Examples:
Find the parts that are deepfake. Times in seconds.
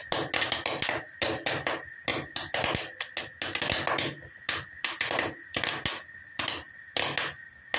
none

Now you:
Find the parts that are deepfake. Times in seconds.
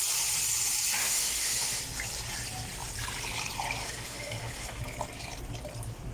1.0-1.8 (autoencoder, DAC-VAE); 3.8-4.8